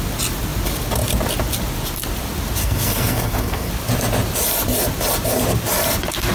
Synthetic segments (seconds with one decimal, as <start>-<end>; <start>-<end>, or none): 2.6-3.7

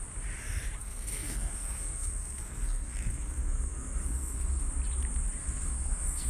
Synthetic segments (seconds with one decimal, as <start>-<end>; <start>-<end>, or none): 0.8-4.6; 5.4-6.3

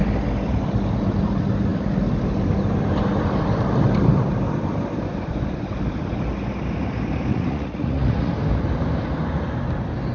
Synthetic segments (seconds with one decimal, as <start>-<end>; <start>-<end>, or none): 7.3-8.3